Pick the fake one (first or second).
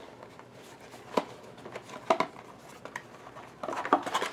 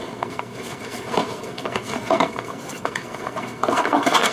second